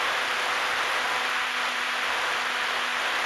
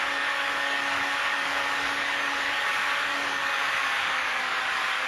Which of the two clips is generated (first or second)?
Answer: second